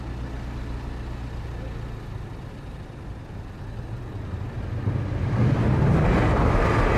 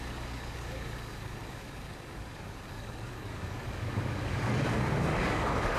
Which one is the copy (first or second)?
second